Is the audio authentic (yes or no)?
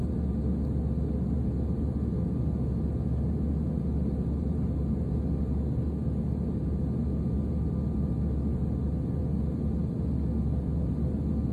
yes